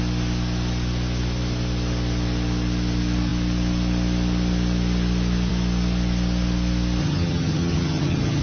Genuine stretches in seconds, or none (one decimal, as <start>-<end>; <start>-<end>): 0.0-7.0

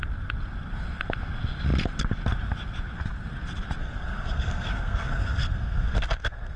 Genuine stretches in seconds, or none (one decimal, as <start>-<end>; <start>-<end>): 0.0-3.8

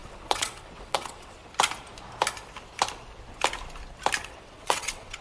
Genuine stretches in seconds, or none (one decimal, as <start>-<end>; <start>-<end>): 1.4-4.2

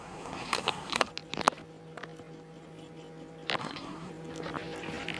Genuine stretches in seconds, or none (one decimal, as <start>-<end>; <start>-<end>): 1.1-3.6; 4.1-5.2

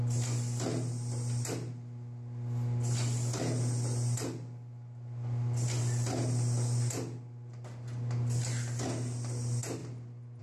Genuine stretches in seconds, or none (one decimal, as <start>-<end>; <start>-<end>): 0.0-10.4

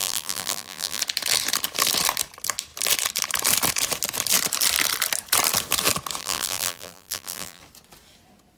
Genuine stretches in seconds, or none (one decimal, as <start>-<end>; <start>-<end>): 1.0-6.2; 7.6-8.6

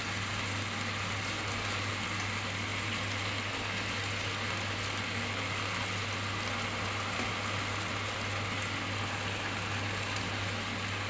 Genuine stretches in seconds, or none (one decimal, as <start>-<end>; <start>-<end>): 0.0-11.1